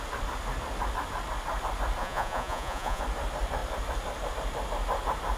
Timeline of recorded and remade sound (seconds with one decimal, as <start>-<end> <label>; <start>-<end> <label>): 0.0-2.0 recorded; 2.0-3.0 remade; 3.0-5.4 recorded